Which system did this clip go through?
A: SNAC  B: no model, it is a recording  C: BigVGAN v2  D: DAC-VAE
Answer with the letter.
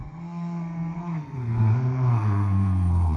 A